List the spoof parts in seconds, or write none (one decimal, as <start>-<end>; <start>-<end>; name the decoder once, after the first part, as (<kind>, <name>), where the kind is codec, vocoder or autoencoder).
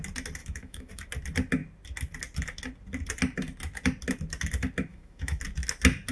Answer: 0.4-0.9 (autoencoder, DAC-VAE); 4.9-5.4